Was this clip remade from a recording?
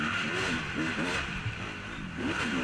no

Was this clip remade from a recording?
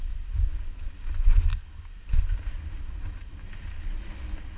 no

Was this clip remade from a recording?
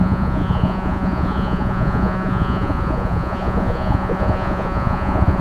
yes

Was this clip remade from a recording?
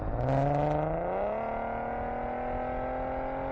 no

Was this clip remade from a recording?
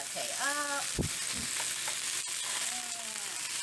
no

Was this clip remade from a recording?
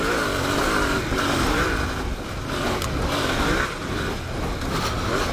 no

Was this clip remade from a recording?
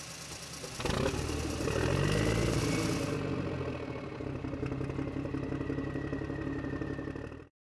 no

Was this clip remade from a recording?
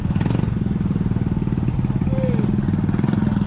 no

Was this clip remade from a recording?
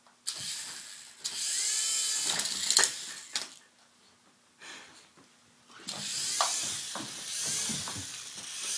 no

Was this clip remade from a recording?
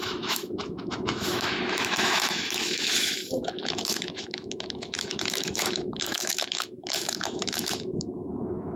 yes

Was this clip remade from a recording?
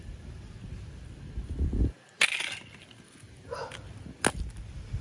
no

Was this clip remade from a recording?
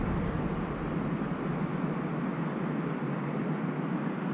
no